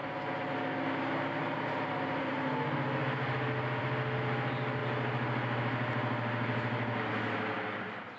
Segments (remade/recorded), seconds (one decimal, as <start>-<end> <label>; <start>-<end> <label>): 0.0-1.4 recorded; 1.4-2.4 remade; 2.4-8.2 recorded

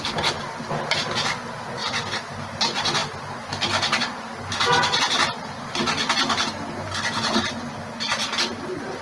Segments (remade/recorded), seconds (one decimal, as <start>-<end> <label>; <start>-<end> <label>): 0.0-9.0 recorded

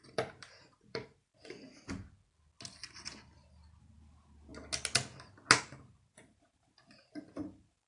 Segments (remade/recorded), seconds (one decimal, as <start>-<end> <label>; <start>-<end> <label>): 0.0-1.3 remade; 1.3-3.8 recorded; 3.8-4.5 remade; 4.5-5.6 recorded; 5.6-7.9 remade

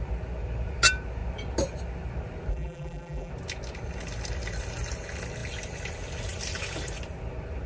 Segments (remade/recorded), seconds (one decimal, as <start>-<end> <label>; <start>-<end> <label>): 0.0-2.5 recorded; 2.5-3.3 remade; 3.3-7.7 recorded